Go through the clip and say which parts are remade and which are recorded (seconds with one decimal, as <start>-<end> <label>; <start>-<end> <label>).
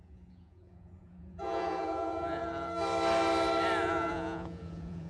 0.0-2.4 remade; 2.4-3.8 recorded; 3.8-5.1 remade